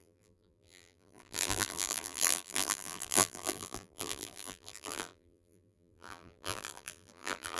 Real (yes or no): no